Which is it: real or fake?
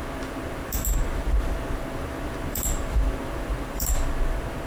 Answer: fake